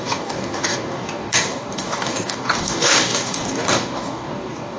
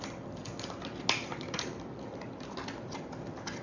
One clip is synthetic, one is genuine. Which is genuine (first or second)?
second